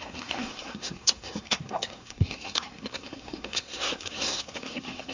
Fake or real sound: fake